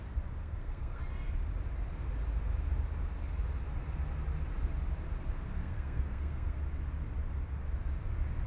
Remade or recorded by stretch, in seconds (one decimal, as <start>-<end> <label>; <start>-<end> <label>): 0.0-0.4 recorded; 0.4-1.0 remade; 1.0-5.6 recorded; 5.6-6.6 remade; 6.6-8.5 recorded